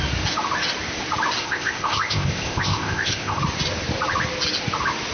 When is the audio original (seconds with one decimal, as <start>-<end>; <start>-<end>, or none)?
0.0-1.4; 3.4-5.1